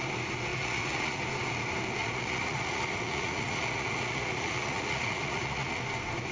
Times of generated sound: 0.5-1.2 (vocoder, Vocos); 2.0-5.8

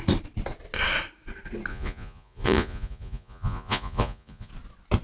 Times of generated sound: 1.7-4.5 (vocoder, Vocos)